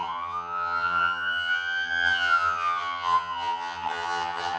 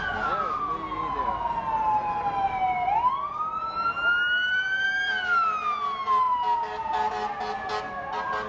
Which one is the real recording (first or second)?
second